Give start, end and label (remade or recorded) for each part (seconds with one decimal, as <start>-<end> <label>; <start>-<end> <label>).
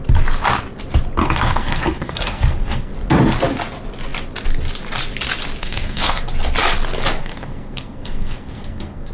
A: 0.0-1.2 recorded; 1.2-2.9 remade; 2.9-5.6 recorded; 5.6-6.2 remade; 6.2-7.2 recorded; 7.2-9.1 remade